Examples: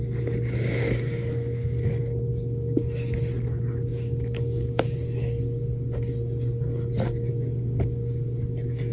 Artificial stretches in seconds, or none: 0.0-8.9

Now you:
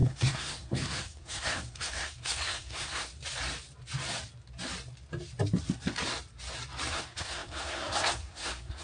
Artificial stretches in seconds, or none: 0.0-3.1; 6.9-8.8

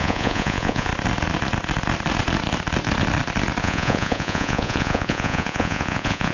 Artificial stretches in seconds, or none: 0.0-0.9; 3.6-6.3

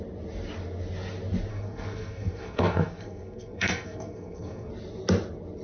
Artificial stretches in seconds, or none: 1.5-4.7

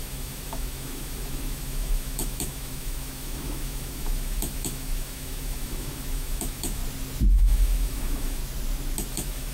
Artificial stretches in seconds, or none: 0.0-6.8; 7.3-8.4; 9.1-9.5

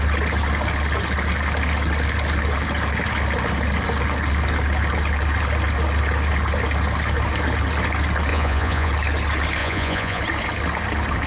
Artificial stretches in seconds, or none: 8.3-8.9; 9.6-10.2

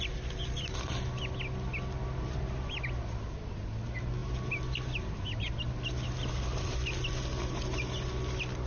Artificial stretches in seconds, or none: none

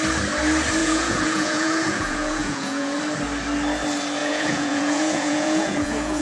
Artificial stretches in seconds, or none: 0.8-3.0; 4.2-6.2